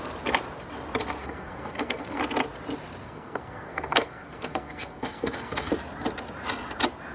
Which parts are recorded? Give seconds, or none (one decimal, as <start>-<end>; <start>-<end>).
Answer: 0.0-1.2; 2.2-3.0; 5.7-7.1